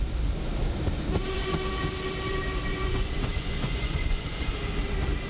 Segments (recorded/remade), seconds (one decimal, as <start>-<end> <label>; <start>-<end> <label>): 0.0-2.7 recorded; 2.7-4.5 remade; 4.5-5.3 recorded